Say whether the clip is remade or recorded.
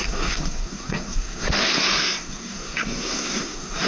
remade